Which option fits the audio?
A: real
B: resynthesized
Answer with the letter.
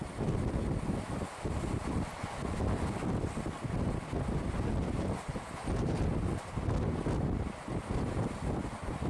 A